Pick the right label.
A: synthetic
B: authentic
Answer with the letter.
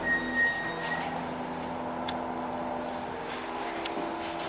A